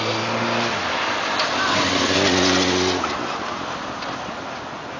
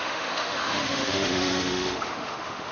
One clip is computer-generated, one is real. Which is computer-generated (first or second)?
second